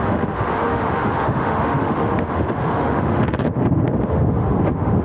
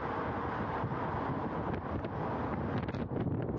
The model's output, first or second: first